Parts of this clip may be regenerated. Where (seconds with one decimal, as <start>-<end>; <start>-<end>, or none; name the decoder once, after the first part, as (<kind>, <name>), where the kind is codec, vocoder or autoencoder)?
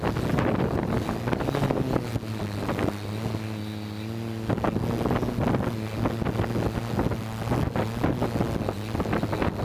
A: none